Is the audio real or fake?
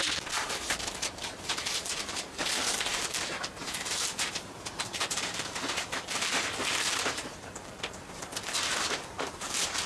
fake